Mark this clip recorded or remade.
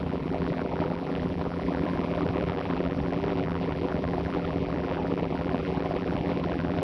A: remade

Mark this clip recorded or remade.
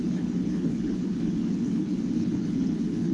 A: remade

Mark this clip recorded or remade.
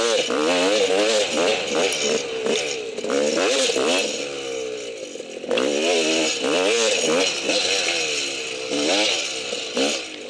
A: recorded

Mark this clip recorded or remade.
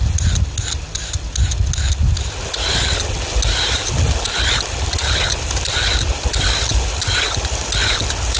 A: recorded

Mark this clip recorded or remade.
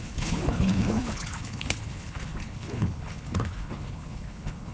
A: remade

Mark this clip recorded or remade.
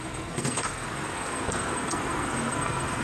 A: remade